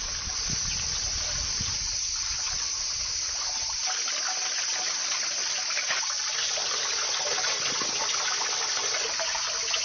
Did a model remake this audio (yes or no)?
no